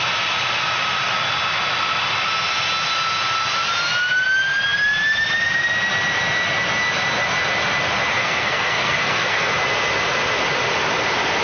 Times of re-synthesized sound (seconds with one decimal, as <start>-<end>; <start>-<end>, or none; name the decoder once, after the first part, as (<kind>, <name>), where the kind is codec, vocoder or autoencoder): 8.1-9.5 (codec, SNAC)